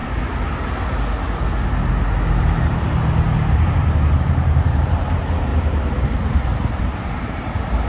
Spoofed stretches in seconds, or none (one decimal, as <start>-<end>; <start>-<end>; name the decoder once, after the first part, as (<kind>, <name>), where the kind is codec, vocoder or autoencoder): 4.2-5.5 (vocoder, BigVGAN v2); 6.7-7.9